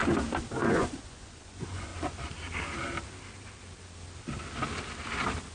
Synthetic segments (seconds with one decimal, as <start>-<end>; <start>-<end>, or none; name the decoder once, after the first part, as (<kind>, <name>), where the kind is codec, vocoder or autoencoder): 0.7-1.9 (vocoder, Vocos)